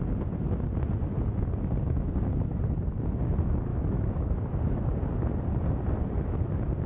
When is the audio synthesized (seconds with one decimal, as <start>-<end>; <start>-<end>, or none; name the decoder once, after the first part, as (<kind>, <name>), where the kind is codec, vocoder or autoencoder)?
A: 3.7-4.8 (autoencoder, DAC-VAE)